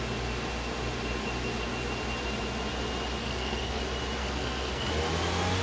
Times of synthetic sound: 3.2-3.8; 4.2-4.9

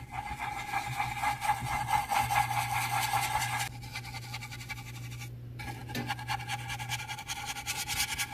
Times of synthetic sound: none

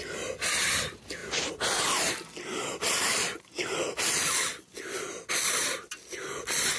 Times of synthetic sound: none

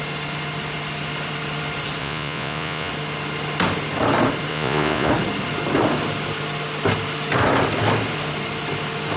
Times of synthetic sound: 2.0-2.9; 4.5-5.1

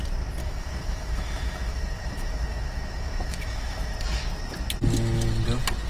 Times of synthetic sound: 0.4-3.9